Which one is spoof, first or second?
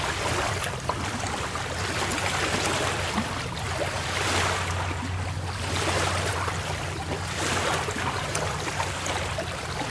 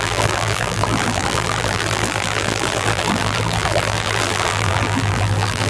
second